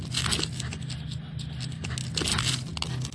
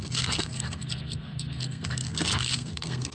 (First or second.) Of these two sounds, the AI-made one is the second